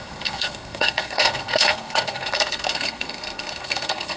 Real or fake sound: fake